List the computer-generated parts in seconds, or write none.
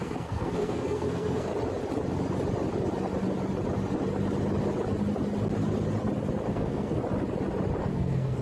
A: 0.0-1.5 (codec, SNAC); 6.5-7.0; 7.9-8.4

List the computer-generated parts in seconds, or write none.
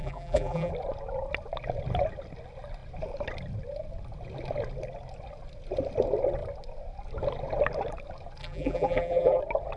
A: 0.0-0.7 (vocoder, BigVGAN v2); 8.4-9.4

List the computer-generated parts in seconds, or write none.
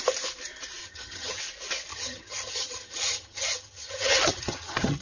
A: 0.8-1.4 (vocoder, HiFi-GAN); 1.9-5.0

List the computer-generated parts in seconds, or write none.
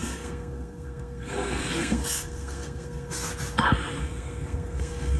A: 0.0-3.3 (codec, SNAC); 4.0-5.2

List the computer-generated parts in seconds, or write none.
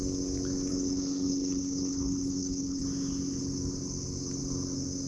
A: 0.7-2.8 (codec, HILCodec)